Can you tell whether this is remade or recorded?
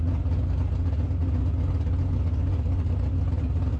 recorded